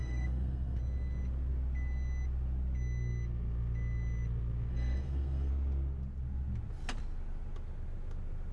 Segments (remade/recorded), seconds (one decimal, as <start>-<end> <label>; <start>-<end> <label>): 0.0-0.8 remade; 0.8-4.7 recorded; 4.7-5.5 remade; 5.5-8.5 recorded